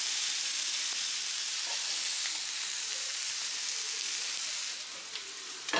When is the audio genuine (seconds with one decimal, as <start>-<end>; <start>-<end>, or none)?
3.1-5.1